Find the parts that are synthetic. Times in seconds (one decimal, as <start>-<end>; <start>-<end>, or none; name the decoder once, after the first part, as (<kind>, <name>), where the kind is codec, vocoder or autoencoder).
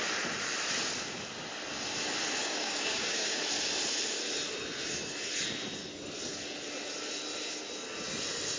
2.4-3.4 (codec, DAC)